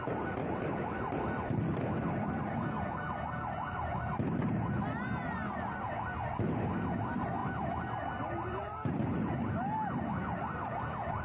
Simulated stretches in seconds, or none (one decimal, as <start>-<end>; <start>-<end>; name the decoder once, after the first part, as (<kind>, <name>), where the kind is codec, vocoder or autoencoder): none

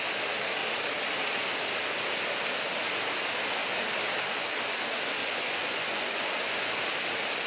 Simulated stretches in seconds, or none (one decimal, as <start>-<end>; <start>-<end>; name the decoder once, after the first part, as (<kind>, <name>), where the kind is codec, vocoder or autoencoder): 5.2-6.8 (vocoder, Vocos)